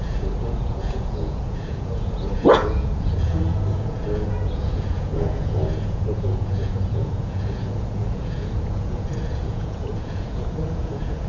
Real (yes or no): no